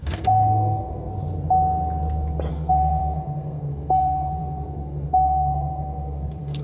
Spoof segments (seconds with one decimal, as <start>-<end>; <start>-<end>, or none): 0.0-1.1; 2.5-6.6